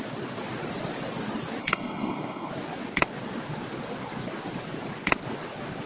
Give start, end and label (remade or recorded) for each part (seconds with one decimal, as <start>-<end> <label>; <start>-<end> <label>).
0.0-1.6 recorded; 1.6-2.5 remade; 2.5-5.9 recorded